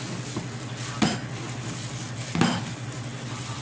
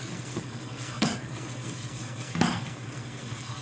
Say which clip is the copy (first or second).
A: second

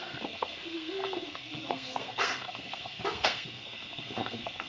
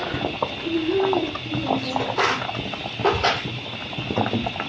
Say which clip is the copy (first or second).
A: first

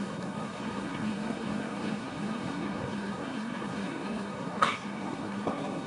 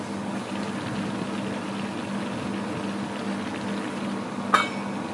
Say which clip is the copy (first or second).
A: first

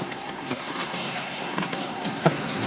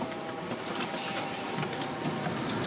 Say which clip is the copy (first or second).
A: first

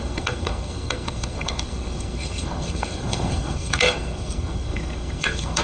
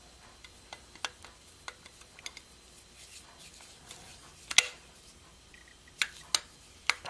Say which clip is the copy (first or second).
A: first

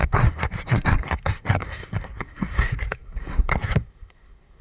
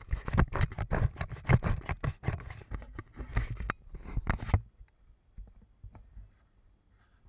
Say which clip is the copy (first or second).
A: first